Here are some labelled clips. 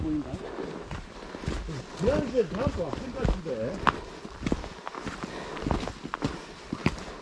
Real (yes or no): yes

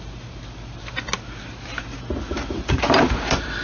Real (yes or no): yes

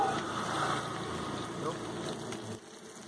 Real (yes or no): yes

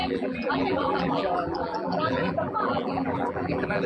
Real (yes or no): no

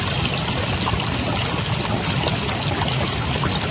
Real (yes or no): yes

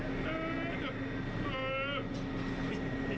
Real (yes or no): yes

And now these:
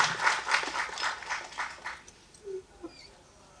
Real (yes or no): yes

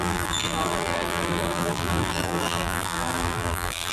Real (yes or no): no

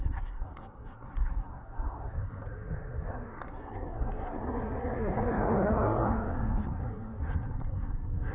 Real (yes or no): no